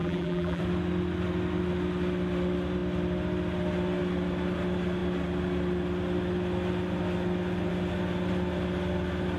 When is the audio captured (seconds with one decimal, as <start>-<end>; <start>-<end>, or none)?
0.6-9.4

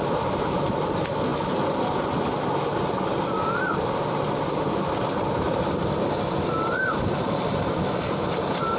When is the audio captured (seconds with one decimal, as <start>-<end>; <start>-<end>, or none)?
0.0-8.8

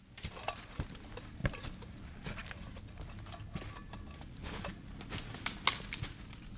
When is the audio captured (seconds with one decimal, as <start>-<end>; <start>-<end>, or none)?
0.0-1.4; 2.0-6.6

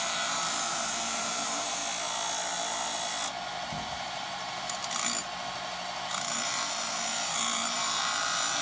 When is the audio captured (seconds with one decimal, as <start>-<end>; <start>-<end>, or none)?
1.8-3.9; 4.8-5.4

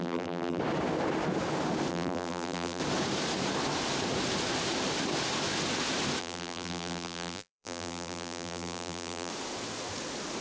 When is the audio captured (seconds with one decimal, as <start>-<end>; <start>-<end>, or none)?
0.6-1.9; 2.8-6.2; 9.3-10.4

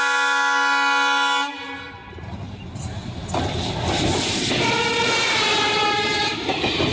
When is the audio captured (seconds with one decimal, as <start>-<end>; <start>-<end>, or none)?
0.0-2.0; 2.6-6.9

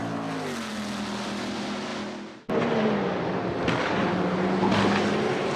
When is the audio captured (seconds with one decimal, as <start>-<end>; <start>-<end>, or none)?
0.0-5.6